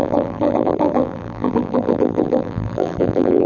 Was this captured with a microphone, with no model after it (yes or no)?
no